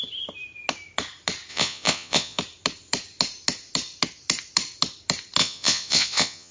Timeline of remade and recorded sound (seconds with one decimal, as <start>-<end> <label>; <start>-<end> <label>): 0.0-1.5 recorded; 1.5-2.4 remade; 2.4-5.4 recorded; 5.4-6.5 remade